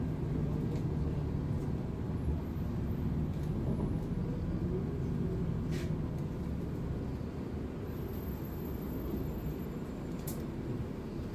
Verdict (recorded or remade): recorded